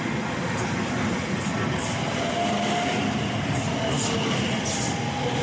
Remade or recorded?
recorded